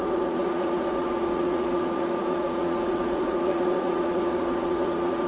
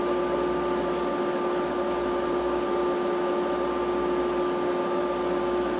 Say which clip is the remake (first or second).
first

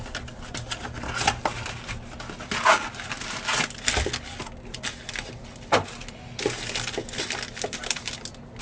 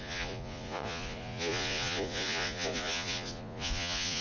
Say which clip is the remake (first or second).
second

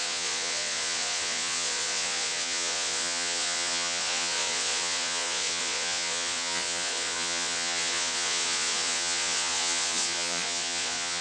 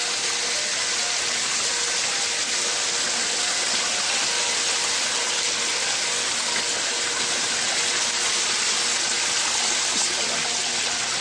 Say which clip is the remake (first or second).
first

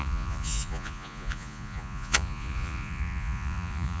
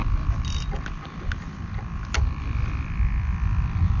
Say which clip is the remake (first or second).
first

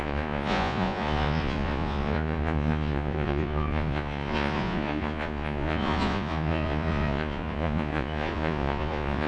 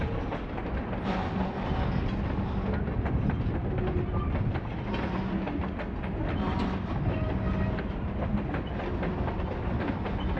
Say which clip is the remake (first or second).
first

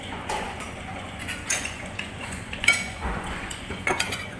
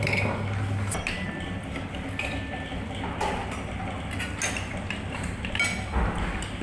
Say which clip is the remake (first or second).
first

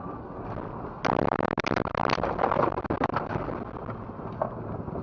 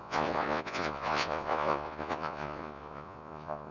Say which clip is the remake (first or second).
second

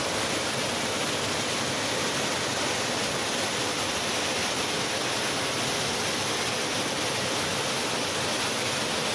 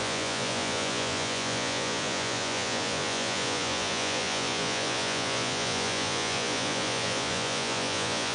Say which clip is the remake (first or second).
second